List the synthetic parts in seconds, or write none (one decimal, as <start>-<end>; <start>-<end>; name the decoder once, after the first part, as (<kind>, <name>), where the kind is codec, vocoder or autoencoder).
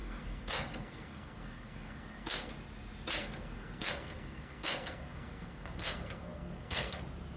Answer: 0.0-2.5 (codec, SNAC); 3.2-7.0